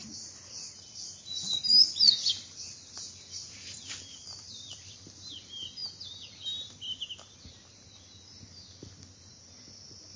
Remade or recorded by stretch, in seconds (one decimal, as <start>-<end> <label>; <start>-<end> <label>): 0.0-10.2 recorded